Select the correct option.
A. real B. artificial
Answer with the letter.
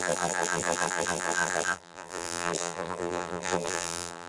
B